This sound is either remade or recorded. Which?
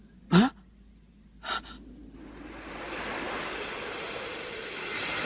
recorded